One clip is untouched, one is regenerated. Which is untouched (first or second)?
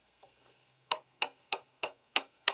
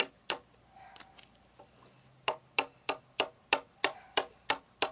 second